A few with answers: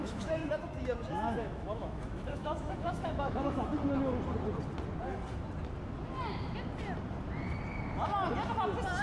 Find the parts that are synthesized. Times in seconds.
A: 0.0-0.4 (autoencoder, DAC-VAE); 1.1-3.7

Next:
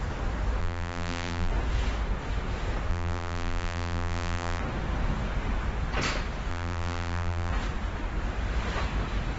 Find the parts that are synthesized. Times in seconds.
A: 0.6-1.5 (vocoder, BigVGAN v2); 2.9-4.6; 6.5-7.5

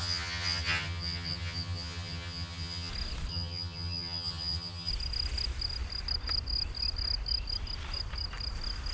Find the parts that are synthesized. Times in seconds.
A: 0.0-2.9 (vocoder, HiFi-GAN); 3.3-4.9

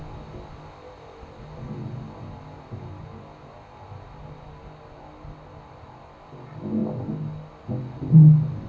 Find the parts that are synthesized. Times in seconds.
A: none

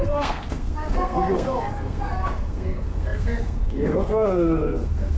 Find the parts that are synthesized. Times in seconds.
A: 0.0-5.2 (codec, SNAC)